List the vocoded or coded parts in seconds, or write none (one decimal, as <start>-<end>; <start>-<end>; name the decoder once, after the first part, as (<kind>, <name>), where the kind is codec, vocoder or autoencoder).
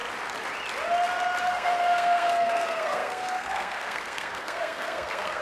1.4-5.4 (codec, SNAC)